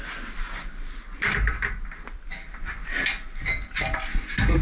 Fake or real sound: real